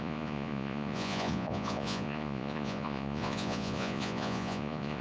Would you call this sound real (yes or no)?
no